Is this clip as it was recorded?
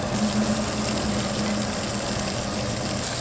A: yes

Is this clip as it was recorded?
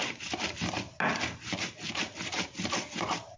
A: yes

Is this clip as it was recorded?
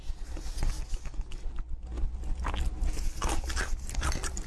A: yes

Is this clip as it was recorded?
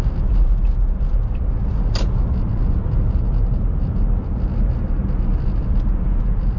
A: yes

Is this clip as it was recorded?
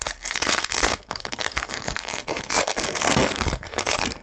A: no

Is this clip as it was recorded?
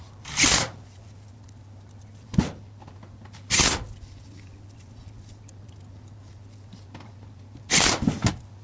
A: yes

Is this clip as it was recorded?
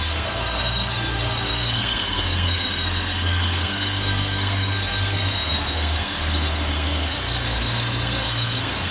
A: no